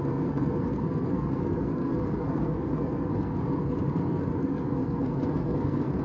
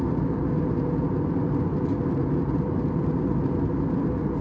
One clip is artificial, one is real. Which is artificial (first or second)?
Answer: first